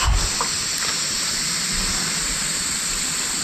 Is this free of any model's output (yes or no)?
yes